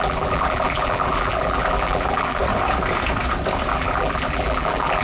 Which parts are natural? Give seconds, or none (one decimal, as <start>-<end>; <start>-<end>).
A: 2.4-3.7